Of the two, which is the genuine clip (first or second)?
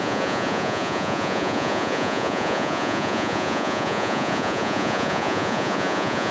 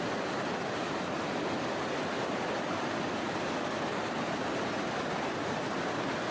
second